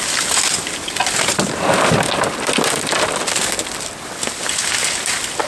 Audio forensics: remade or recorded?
recorded